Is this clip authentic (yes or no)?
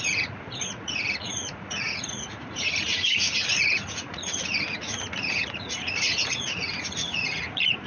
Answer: no